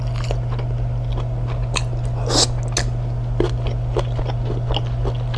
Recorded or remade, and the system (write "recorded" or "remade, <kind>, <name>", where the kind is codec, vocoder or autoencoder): recorded